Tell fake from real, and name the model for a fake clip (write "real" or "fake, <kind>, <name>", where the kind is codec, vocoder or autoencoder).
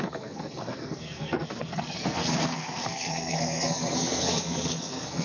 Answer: fake, codec, SNAC